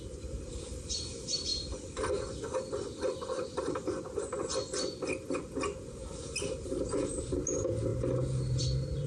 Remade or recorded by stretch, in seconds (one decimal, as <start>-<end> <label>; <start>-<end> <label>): 0.0-9.1 recorded